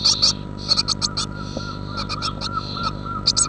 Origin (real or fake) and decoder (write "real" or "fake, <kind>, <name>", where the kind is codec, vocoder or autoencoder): real